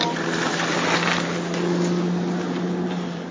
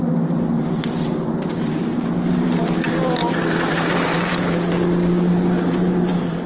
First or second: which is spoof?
second